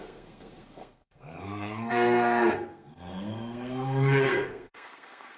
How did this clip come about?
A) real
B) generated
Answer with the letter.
B